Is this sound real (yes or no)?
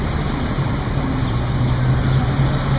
yes